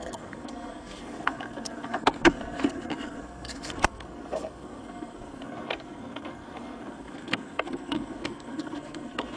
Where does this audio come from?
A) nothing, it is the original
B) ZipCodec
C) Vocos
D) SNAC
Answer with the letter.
D